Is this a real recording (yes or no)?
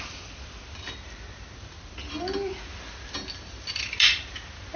yes